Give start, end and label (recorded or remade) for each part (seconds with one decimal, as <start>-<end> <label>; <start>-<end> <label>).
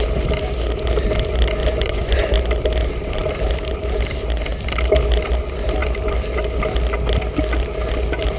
0.0-1.6 recorded; 1.6-2.3 remade; 2.3-8.4 recorded